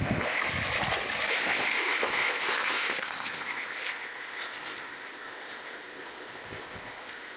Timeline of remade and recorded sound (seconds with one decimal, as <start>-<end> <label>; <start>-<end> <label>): 0.0-0.4 remade; 0.4-1.3 recorded; 1.3-7.4 remade